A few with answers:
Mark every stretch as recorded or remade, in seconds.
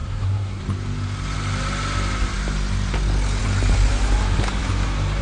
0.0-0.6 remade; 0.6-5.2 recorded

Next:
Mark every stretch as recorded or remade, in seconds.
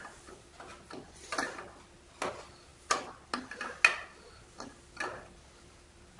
0.0-6.2 recorded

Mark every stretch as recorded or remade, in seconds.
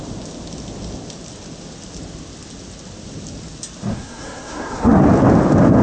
0.0-3.9 recorded; 3.9-5.0 remade; 5.0-5.8 recorded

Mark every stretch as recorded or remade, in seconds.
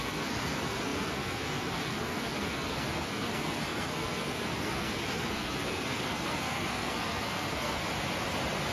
0.0-7.8 remade; 7.8-8.7 recorded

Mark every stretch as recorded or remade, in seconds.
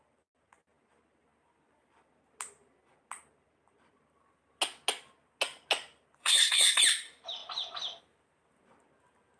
0.0-6.2 recorded; 6.2-6.8 remade; 6.8-9.4 recorded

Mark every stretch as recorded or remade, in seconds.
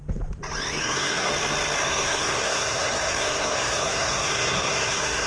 0.0-0.8 recorded; 0.8-1.3 remade; 1.3-1.8 recorded; 1.8-5.3 remade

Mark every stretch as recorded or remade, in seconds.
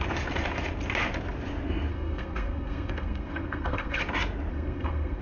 0.0-1.9 recorded; 1.9-4.0 remade; 4.0-4.5 recorded; 4.5-5.2 remade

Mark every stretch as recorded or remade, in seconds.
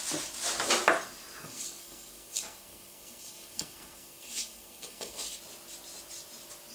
0.0-1.4 recorded; 1.4-5.4 remade; 5.4-6.7 recorded